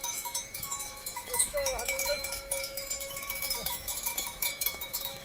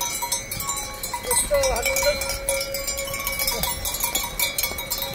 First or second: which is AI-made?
first